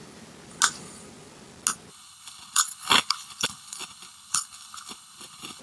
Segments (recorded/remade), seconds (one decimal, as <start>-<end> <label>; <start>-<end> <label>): 0.0-1.9 recorded; 1.9-5.6 remade